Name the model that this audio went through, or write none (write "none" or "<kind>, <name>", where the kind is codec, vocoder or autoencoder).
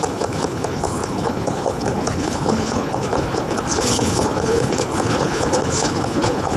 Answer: codec, HILCodec